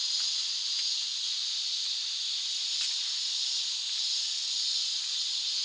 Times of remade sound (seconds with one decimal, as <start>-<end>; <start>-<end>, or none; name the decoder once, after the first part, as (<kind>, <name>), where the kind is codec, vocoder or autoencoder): none